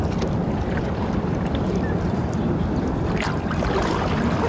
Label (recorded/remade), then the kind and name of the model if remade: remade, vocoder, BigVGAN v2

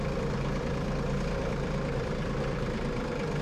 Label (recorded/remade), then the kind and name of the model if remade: remade, vocoder, BigVGAN v2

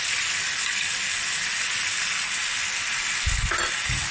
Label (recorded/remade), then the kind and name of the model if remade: recorded